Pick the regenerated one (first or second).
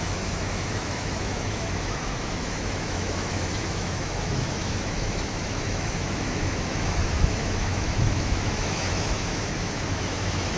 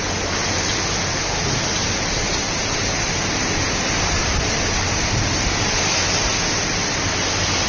first